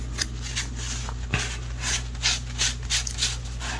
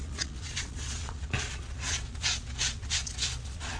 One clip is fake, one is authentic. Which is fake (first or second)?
second